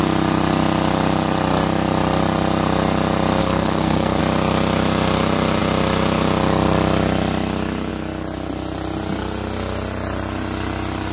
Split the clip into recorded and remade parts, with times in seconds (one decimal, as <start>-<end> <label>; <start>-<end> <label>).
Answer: 0.0-3.4 recorded; 3.4-4.2 remade; 4.2-11.1 recorded